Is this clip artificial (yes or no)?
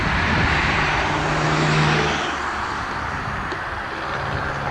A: no